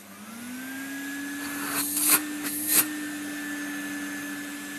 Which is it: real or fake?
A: real